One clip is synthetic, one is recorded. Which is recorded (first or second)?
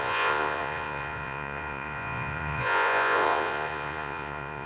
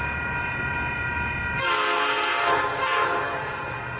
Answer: second